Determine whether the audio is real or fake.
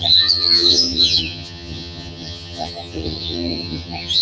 fake